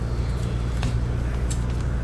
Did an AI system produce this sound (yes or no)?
no